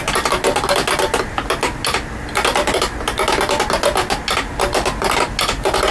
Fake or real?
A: real